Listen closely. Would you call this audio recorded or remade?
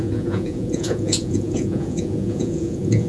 remade